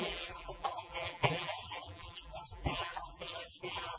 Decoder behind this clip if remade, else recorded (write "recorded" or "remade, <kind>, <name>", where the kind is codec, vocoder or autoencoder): remade, vocoder, BigVGAN v2